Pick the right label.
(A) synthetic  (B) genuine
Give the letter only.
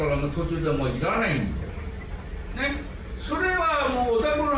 B